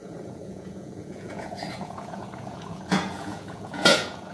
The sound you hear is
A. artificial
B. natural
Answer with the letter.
A